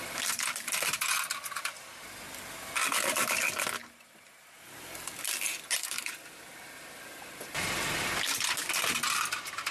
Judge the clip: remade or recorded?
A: recorded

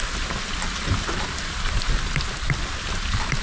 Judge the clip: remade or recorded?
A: recorded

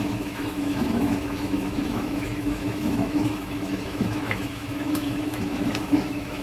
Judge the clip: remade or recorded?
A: remade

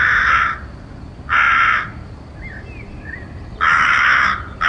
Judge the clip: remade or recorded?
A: recorded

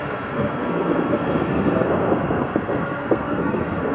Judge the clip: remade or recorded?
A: remade